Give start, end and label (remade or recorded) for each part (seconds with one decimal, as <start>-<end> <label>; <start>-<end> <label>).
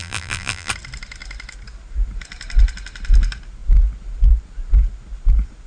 0.0-0.7 remade; 0.7-5.7 recorded